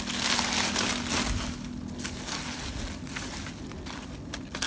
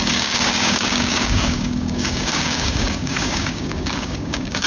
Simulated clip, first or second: second